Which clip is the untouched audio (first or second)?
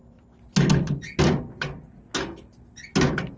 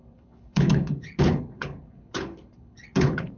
first